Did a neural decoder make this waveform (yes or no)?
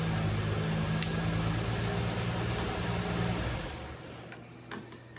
no